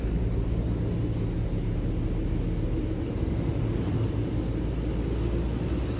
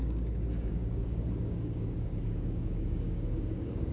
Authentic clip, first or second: first